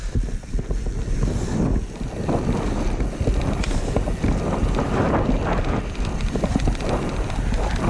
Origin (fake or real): real